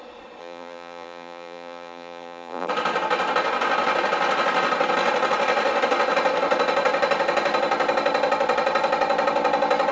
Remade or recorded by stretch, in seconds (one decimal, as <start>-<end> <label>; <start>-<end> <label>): 0.0-0.4 recorded; 0.4-2.7 remade; 2.7-9.9 recorded